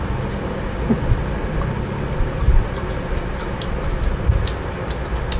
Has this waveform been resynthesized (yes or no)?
no